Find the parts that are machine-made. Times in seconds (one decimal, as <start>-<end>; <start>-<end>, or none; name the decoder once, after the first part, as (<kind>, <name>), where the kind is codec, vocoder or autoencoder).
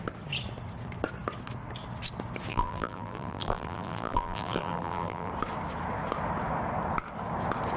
2.5-5.3 (vocoder, BigVGAN v2)